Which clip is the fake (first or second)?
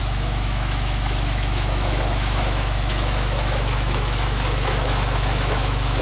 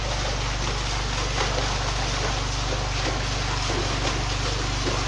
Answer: first